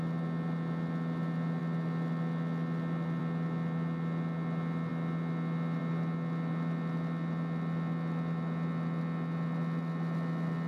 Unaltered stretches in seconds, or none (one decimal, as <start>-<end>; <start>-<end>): 0.0-10.7